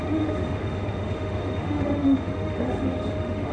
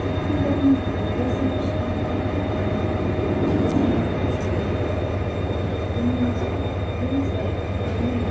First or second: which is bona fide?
second